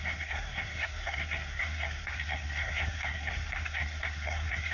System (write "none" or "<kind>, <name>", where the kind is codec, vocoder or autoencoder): codec, SNAC